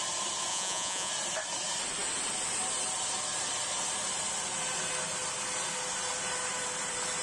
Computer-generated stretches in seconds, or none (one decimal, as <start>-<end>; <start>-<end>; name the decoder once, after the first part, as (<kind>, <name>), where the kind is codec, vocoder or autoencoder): 0.5-1.1 (vocoder, Vocos)